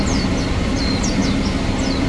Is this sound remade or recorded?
recorded